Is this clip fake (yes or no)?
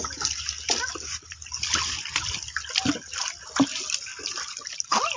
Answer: no